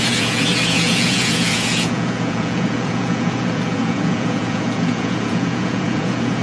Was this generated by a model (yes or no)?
yes